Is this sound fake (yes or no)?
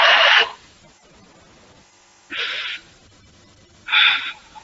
no